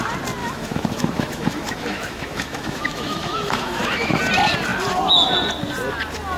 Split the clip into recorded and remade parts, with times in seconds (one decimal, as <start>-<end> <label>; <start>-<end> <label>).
0.0-0.4 recorded; 0.4-4.2 remade; 4.2-6.4 recorded